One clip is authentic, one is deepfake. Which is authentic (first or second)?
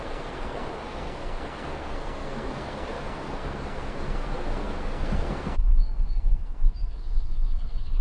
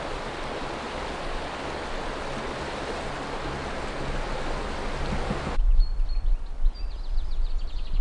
second